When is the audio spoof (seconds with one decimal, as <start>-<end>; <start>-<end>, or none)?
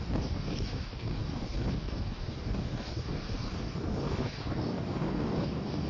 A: 0.0-5.9